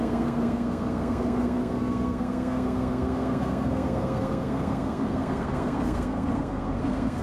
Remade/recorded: remade